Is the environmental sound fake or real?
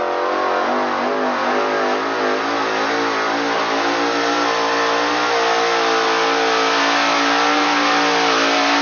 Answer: real